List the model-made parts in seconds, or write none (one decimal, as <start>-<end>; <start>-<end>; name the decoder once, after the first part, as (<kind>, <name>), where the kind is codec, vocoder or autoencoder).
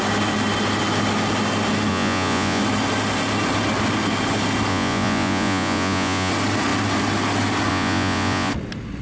1.9-2.6 (vocoder, Vocos); 4.7-6.3; 7.7-8.5